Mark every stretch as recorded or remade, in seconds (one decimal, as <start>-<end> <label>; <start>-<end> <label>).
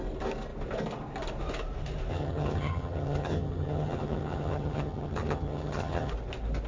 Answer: 0.0-2.1 recorded; 2.1-6.1 remade; 6.1-6.7 recorded